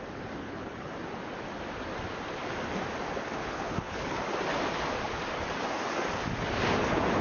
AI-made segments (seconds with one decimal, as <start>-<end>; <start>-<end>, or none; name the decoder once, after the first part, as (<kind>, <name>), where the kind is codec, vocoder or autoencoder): 0.4-0.9 (codec, HILCodec); 3.4-4.2

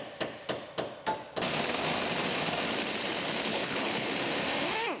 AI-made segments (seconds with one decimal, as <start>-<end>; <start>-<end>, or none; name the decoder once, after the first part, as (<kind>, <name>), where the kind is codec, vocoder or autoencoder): 3.5-4.1 (codec, HILCodec)

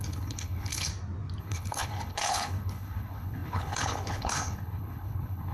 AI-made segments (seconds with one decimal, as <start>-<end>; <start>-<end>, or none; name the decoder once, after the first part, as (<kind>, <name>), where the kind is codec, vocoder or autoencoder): 0.0-0.9 (codec, HILCodec); 1.4-5.5

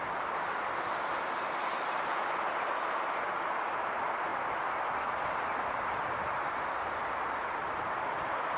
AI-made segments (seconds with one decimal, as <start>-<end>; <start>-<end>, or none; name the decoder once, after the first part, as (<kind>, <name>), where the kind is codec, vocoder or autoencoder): none

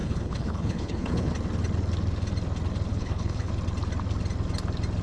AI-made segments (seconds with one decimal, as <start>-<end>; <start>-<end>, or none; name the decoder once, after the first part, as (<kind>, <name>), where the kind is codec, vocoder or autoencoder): 0.0-1.3 (codec, HILCodec); 2.9-3.5